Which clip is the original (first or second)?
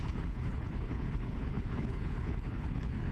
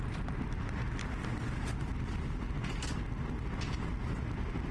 second